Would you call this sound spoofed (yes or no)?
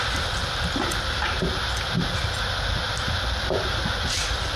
no